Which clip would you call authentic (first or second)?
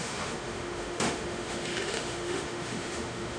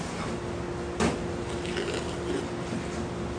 second